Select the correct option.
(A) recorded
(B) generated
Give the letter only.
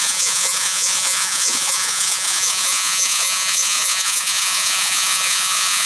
B